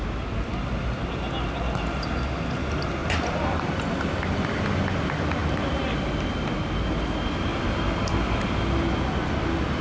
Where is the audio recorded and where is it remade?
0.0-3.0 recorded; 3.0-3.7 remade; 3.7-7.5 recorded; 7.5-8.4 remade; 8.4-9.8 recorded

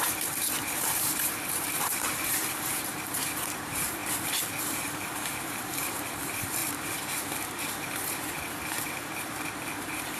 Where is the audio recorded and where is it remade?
0.0-10.2 remade

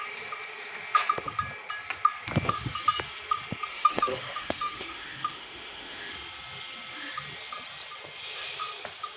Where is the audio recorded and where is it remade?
0.0-3.7 recorded; 3.7-6.1 remade; 6.1-9.2 recorded

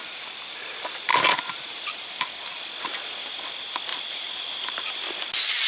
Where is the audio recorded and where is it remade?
0.0-3.9 recorded; 3.9-4.9 remade; 4.9-5.7 recorded